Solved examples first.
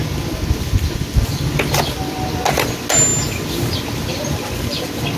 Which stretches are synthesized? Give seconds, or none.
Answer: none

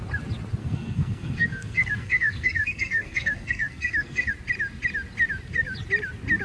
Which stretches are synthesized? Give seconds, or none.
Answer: 0.6-4.3 (codec, SNAC)